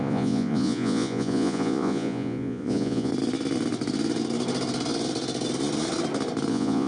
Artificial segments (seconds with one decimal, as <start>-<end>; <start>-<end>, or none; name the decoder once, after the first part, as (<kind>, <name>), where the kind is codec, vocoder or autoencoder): 0.0-3.1 (vocoder, Vocos); 6.5-6.9